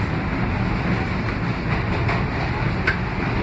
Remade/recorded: recorded